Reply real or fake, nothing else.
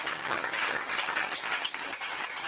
fake